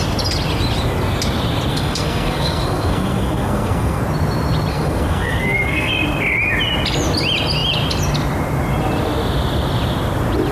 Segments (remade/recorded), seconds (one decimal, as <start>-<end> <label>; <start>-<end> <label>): 0.0-1.7 recorded; 1.7-4.0 remade; 4.0-4.7 recorded; 4.7-5.9 remade; 5.9-10.5 recorded